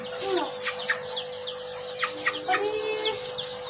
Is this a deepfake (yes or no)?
no